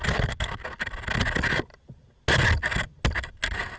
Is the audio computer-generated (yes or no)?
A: no